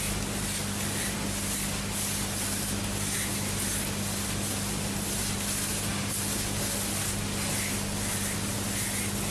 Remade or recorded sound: recorded